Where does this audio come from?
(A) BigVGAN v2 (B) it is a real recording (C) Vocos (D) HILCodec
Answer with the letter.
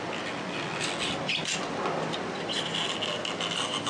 B